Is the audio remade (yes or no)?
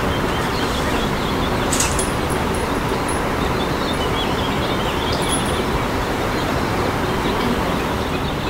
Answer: no